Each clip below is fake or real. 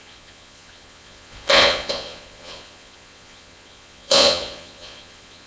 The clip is fake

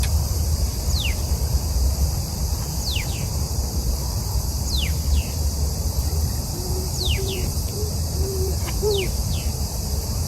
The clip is fake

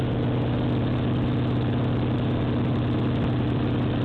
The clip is real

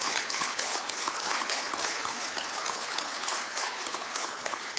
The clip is fake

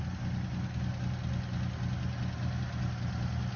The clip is real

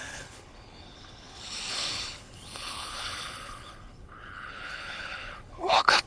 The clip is fake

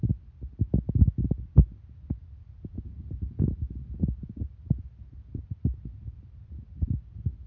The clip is real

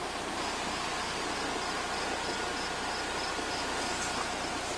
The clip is real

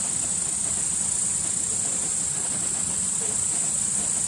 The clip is real